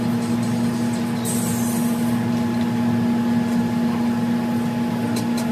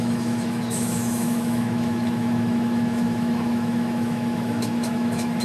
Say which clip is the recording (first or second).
first